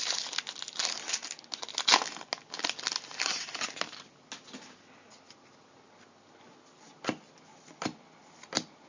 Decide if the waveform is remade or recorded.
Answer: recorded